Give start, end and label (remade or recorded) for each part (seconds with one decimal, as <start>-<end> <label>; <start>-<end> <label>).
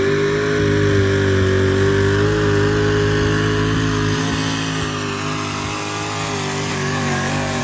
0.0-6.7 recorded; 6.7-7.6 remade